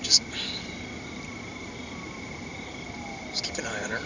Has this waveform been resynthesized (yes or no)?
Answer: no